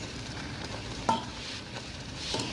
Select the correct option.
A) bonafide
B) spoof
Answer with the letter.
B